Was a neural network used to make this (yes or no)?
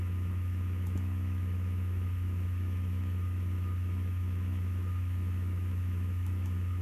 yes